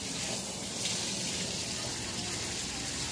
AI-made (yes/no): no